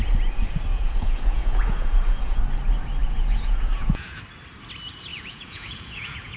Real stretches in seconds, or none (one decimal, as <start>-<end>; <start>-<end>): 0.0-0.7; 2.4-3.0; 4.2-5.1